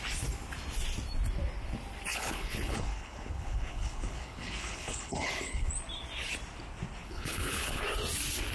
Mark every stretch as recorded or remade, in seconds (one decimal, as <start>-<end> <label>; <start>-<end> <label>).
0.0-2.1 recorded; 2.1-5.7 remade; 5.7-7.0 recorded; 7.0-7.8 remade; 7.8-8.5 recorded